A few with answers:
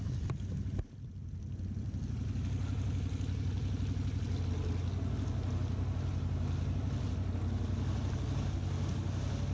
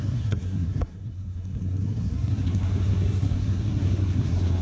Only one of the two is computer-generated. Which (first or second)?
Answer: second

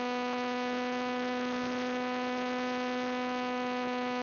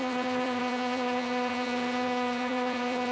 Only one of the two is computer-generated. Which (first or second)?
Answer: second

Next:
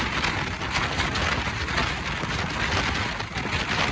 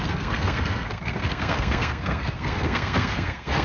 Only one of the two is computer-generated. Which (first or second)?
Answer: second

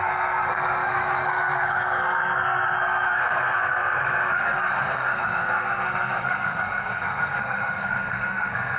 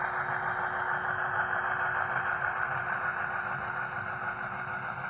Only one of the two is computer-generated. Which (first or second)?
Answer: first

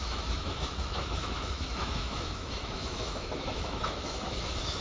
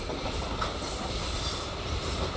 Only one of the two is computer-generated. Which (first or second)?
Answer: first